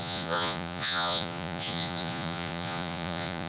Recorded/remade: remade